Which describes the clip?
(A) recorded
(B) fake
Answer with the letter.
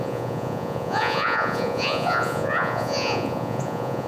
B